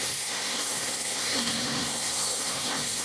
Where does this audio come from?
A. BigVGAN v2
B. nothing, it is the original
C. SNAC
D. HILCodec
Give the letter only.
C